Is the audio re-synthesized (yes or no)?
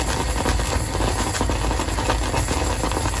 no